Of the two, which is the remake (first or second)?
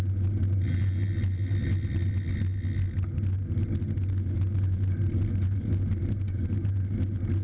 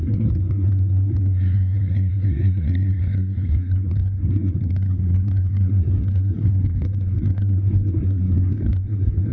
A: second